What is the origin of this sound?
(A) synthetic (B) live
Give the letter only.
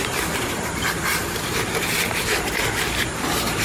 A